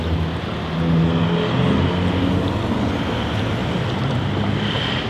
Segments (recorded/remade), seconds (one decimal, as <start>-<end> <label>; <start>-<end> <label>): 0.0-3.6 recorded; 3.6-4.2 remade; 4.2-5.1 recorded

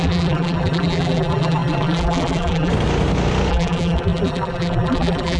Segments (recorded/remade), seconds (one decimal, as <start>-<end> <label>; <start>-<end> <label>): 0.0-2.7 remade; 2.7-3.5 recorded; 3.5-5.4 remade